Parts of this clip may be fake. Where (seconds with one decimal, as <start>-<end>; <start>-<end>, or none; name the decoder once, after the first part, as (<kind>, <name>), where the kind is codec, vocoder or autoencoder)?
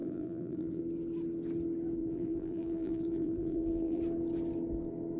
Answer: 0.0-0.8 (vocoder, BigVGAN v2); 2.0-4.0